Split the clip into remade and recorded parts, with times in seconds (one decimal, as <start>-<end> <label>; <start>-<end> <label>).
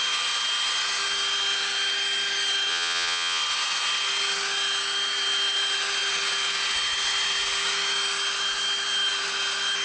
0.0-2.7 recorded; 2.7-3.4 remade; 3.4-9.8 recorded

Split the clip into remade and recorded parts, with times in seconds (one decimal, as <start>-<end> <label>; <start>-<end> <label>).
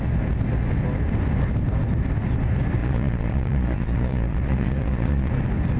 0.0-2.8 recorded; 2.8-5.3 remade; 5.3-5.8 recorded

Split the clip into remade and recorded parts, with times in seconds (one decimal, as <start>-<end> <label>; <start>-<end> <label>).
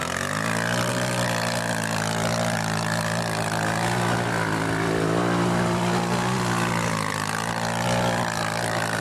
0.0-9.0 recorded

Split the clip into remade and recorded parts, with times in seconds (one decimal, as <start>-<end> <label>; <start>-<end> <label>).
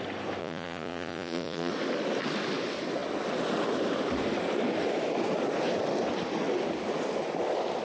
0.0-0.4 recorded; 0.4-1.7 remade; 1.7-7.8 recorded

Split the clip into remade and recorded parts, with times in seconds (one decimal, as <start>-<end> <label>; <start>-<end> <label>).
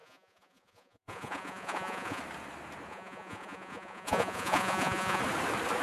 0.0-2.2 remade; 2.2-2.9 recorded; 2.9-5.2 remade; 5.2-5.8 recorded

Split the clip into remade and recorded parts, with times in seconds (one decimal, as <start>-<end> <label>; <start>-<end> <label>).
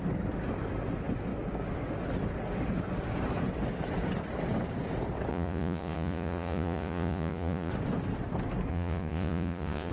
0.0-5.3 recorded; 5.3-7.7 remade; 7.7-8.7 recorded; 8.7-9.9 remade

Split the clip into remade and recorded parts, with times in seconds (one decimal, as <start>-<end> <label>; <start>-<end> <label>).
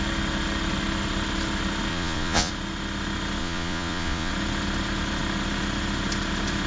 0.0-1.9 recorded; 1.9-2.5 remade; 2.5-3.4 recorded; 3.4-4.3 remade; 4.3-6.7 recorded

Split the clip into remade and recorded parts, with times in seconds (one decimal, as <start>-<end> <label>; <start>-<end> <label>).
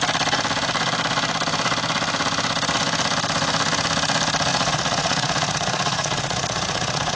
0.0-4.5 recorded; 4.5-7.2 remade